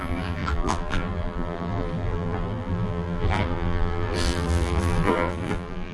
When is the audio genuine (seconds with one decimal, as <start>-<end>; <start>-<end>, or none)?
none